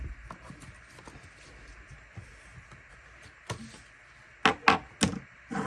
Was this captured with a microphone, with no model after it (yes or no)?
yes